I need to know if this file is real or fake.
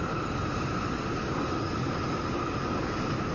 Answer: real